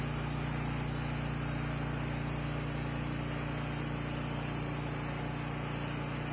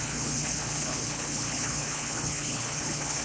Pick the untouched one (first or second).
first